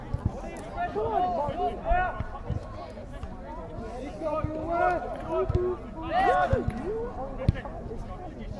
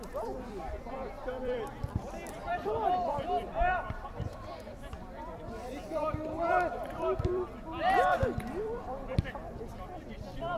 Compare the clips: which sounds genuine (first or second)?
first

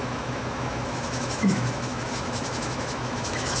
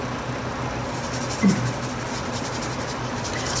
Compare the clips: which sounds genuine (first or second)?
second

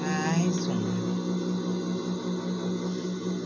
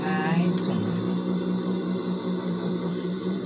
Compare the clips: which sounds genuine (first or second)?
first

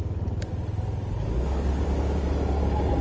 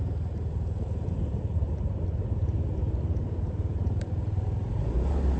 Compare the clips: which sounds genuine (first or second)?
first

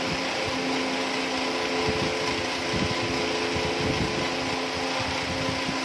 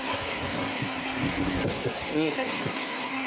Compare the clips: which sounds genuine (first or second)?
first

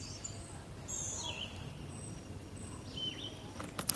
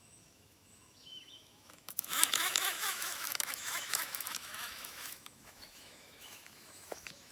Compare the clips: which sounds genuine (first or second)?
first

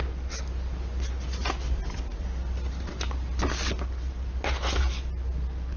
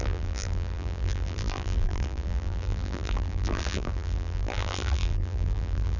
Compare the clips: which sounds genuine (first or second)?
first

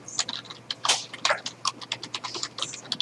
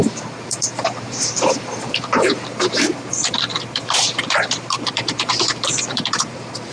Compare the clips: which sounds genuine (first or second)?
first